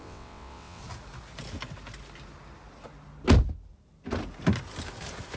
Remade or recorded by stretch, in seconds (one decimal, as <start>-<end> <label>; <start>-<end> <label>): 0.0-0.8 remade; 0.8-5.4 recorded